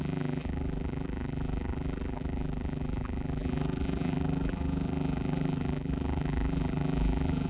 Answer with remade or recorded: remade